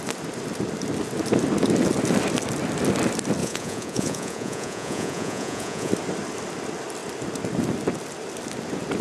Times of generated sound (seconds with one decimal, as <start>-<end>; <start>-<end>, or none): 3.4-5.9